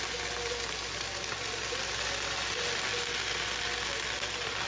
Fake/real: real